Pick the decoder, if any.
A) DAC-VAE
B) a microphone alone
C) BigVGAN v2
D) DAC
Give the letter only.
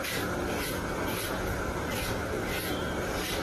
B